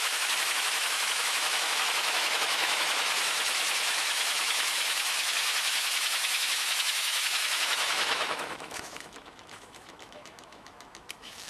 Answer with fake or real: fake